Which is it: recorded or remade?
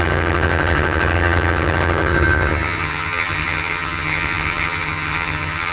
remade